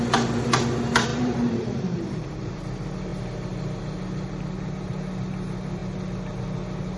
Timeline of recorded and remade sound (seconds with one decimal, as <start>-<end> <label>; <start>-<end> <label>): 0.0-1.1 recorded; 1.1-2.6 remade; 2.6-7.0 recorded